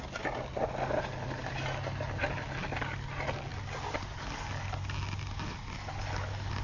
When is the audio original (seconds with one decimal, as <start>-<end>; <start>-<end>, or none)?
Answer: 0.0-6.6